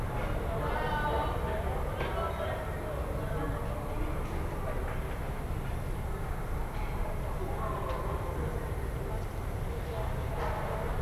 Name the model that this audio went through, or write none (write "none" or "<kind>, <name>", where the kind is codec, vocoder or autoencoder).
none